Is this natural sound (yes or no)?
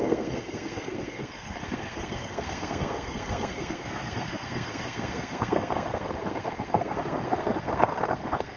no